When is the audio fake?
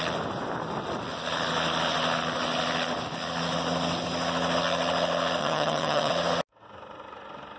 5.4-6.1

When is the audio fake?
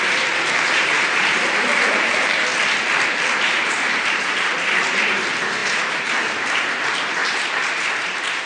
0.0-2.5; 3.5-8.5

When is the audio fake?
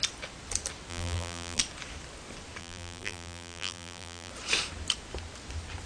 0.9-1.6; 2.6-4.3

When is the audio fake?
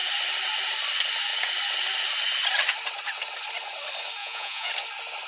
4.2-4.7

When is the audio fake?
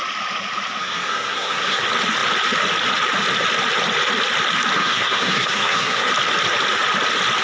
0.8-1.8; 4.8-6.1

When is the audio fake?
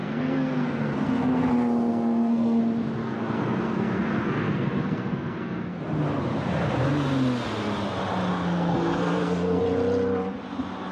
0.0-1.5; 1.9-2.6; 3.0-5.8; 8.3-9.6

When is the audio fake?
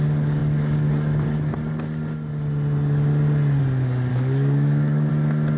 4.1-5.1